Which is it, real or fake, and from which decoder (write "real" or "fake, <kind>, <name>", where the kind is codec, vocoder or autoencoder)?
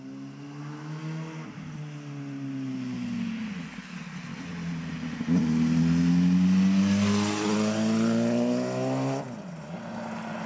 real